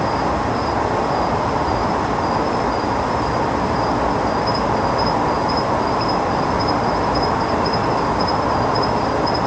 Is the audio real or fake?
real